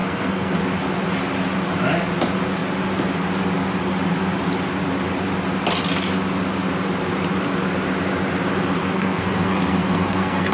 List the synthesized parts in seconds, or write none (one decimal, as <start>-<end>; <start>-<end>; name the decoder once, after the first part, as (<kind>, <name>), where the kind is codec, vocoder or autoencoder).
0.0-0.6 (codec, SNAC); 8.8-10.5